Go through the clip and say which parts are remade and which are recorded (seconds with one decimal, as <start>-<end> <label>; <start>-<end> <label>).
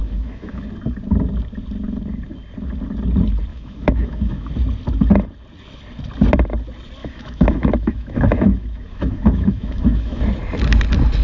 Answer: 0.0-0.6 remade; 0.6-3.5 recorded; 3.5-4.5 remade; 4.5-7.0 recorded; 7.0-10.2 remade; 10.2-11.2 recorded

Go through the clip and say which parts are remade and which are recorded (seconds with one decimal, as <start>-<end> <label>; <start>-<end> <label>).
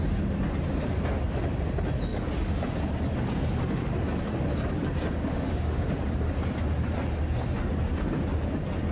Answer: 0.0-5.3 recorded; 5.3-6.0 remade; 6.0-8.9 recorded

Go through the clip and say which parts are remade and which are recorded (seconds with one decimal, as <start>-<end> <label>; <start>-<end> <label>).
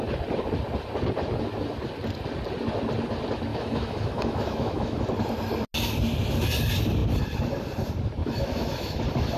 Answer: 0.0-3.5 recorded; 3.5-5.0 remade; 5.0-8.2 recorded; 8.2-9.0 remade; 9.0-9.4 recorded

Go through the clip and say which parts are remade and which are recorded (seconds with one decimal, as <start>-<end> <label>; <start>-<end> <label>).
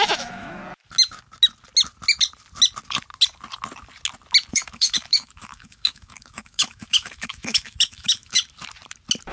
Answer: 0.0-0.6 remade; 0.6-4.5 recorded; 4.5-8.4 remade; 8.4-9.3 recorded